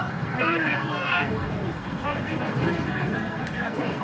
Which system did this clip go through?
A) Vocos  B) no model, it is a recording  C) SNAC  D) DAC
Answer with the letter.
C